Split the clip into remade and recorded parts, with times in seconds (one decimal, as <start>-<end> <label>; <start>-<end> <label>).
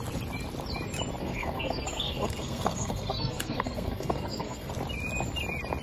0.0-1.2 recorded; 1.2-4.7 remade; 4.7-5.8 recorded